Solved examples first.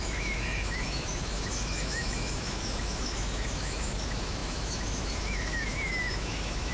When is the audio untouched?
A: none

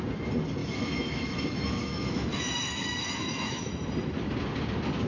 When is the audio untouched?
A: 0.0-0.6; 3.7-5.1

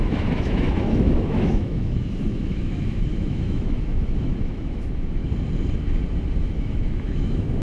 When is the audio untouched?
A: 5.2-6.4

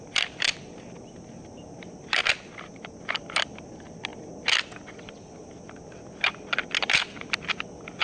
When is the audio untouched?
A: 0.0-8.0

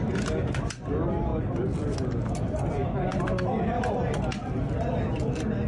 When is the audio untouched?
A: 0.0-5.7